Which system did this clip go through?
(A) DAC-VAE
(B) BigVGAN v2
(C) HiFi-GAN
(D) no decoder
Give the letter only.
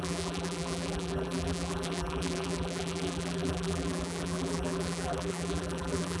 B